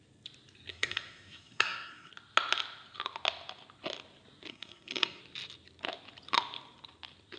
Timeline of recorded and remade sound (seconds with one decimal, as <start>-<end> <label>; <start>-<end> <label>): 0.0-0.7 recorded; 0.7-2.1 remade; 2.1-4.5 recorded; 4.5-5.2 remade; 5.2-7.4 recorded